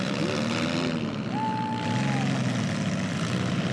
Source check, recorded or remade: recorded